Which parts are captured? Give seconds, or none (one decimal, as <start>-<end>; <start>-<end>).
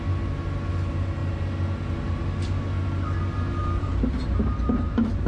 0.0-3.6